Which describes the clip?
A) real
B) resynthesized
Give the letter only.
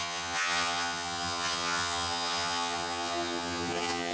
B